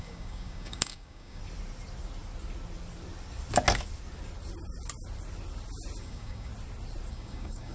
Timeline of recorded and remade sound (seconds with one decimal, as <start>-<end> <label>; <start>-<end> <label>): 0.0-1.4 remade; 1.4-6.0 recorded; 6.0-6.5 remade; 6.5-7.1 recorded; 7.1-7.7 remade